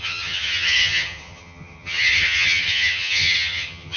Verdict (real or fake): fake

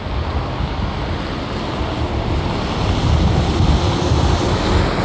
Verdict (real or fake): real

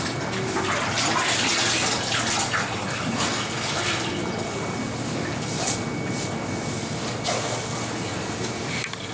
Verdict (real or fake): real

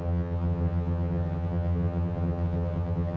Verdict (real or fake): fake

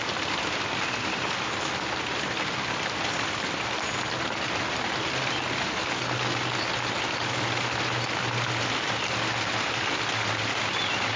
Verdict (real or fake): real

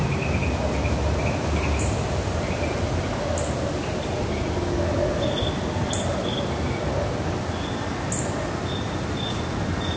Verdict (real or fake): real